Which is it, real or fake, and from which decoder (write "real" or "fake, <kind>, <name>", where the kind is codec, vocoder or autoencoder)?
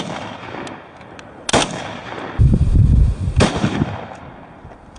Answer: real